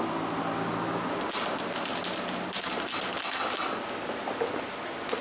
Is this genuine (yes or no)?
yes